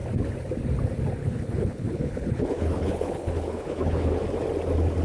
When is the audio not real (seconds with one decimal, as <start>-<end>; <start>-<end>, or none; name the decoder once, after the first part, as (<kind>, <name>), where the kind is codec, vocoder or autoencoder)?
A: 1.2-4.2 (codec, HILCodec)

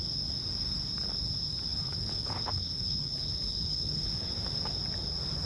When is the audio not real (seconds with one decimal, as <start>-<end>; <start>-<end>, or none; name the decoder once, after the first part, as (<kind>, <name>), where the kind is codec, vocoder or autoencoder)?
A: 1.7-4.3 (codec, HILCodec)